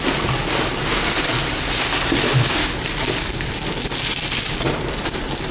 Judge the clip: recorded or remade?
remade